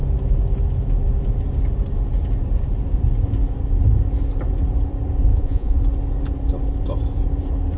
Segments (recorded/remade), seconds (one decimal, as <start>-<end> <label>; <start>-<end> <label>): 0.0-5.3 recorded; 5.3-5.8 remade; 5.8-7.8 recorded